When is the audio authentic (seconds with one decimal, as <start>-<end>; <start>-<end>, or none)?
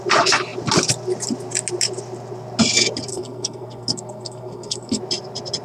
0.0-3.1; 5.0-5.6